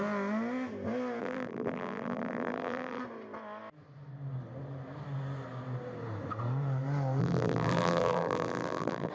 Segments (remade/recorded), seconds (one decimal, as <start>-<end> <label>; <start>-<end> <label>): 0.0-1.2 recorded; 1.2-3.0 remade; 3.0-7.2 recorded; 7.2-9.1 remade